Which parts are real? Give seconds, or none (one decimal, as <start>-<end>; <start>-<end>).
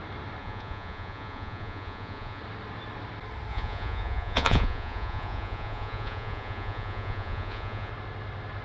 0.0-0.4; 2.4-3.5; 7.9-8.6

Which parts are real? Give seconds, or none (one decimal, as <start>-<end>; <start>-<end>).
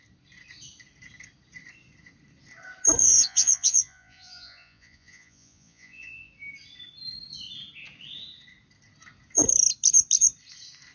0.0-3.0; 6.3-10.9